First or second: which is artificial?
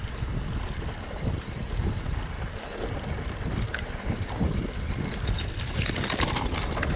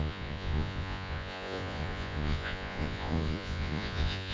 second